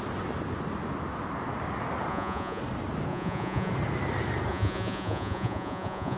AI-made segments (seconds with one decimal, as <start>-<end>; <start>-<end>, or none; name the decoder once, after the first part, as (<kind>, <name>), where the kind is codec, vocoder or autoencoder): 2.1-2.6 (vocoder, Vocos); 3.1-3.7; 4.5-6.2